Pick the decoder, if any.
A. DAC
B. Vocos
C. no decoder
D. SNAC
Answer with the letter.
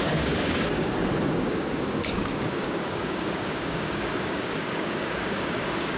A